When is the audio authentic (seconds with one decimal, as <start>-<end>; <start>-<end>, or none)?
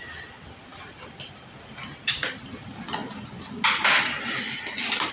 0.0-5.1